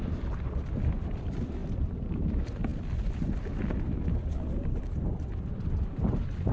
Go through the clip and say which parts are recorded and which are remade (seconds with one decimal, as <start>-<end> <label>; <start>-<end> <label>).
0.0-1.6 recorded; 1.6-2.1 remade; 2.1-6.5 recorded

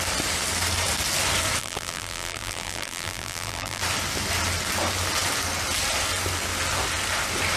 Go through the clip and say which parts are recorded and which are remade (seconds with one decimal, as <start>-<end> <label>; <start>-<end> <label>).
0.0-1.6 recorded; 1.6-3.8 remade; 3.8-7.6 recorded